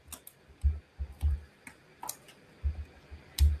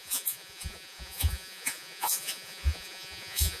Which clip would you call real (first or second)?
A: first